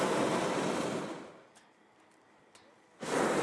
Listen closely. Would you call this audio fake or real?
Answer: fake